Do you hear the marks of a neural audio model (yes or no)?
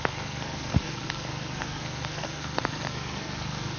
yes